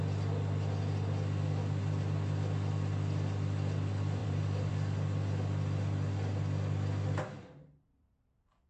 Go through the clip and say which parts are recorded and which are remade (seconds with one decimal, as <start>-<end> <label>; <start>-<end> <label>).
0.0-4.2 recorded; 4.2-4.7 remade; 4.7-8.7 recorded